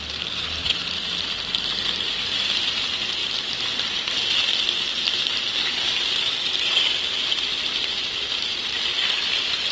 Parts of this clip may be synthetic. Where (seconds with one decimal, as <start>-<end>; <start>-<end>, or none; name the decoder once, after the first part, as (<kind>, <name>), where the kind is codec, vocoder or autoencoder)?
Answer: 0.0-0.8 (vocoder, BigVGAN v2); 1.9-3.2; 5.1-9.7